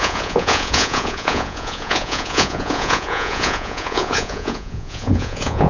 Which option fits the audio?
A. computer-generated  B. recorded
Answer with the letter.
A